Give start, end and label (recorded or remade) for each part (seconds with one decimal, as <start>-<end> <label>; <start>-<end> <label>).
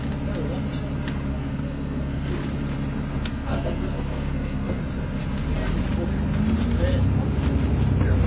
0.0-1.3 recorded; 1.3-2.3 remade; 2.3-3.1 recorded; 3.1-4.8 remade; 4.8-8.3 recorded